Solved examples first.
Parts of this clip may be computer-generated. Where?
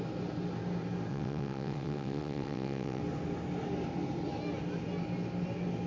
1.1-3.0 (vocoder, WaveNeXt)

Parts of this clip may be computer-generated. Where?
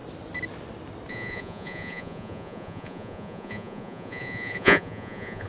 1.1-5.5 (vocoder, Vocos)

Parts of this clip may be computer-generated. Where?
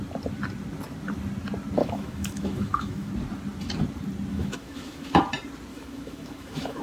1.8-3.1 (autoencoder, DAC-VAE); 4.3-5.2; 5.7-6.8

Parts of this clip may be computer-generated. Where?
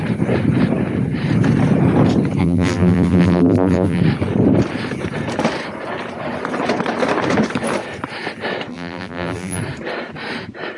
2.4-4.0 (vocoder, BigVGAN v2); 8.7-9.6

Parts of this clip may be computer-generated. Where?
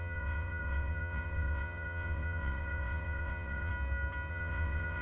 0.0-3.7 (vocoder, WaveNeXt); 4.3-5.0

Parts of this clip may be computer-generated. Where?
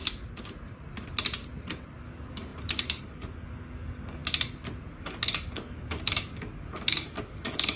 2.0-4.2 (codec, DAC); 5.0-7.8